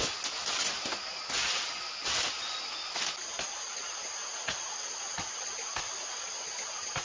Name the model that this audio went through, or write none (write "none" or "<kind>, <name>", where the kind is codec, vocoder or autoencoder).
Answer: none